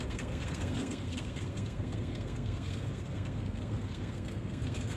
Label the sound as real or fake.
fake